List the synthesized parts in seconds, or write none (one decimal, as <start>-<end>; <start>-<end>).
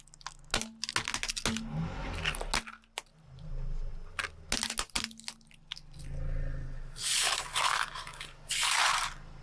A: 7.0-8.7